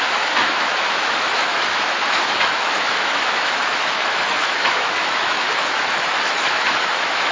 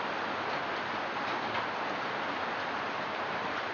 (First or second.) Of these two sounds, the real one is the second